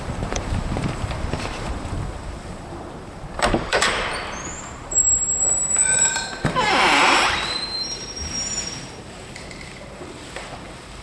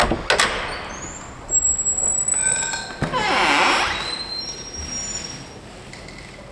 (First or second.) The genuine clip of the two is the second